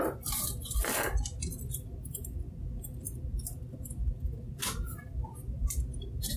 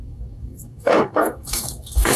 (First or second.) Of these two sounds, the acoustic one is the first